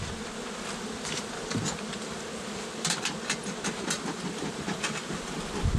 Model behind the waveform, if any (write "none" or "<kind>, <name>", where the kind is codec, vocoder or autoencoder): vocoder, BigVGAN v2